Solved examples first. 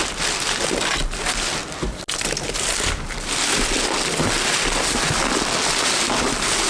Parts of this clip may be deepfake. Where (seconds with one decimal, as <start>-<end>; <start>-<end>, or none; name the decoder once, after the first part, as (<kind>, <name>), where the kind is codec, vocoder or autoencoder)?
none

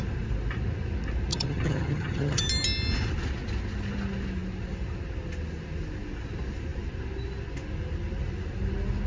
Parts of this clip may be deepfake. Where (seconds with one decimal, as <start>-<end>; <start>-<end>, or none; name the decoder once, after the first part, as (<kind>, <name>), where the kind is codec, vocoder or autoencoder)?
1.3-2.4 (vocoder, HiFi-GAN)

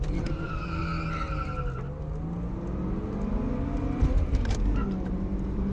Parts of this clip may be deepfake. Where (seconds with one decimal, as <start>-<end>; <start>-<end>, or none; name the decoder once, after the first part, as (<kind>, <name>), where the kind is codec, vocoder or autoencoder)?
0.0-0.8 (vocoder, BigVGAN v2); 4.2-5.7

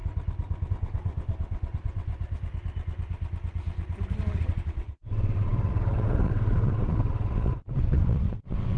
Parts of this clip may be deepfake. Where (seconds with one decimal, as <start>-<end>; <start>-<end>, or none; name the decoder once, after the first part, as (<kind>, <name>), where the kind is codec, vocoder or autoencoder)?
0.7-2.1 (vocoder, WaveNeXt); 4.4-8.8

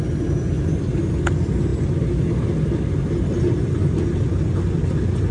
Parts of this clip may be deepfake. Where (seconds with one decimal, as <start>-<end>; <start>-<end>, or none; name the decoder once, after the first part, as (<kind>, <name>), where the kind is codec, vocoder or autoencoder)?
none